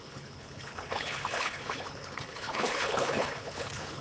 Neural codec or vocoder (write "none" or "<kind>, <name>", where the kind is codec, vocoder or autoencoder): codec, HILCodec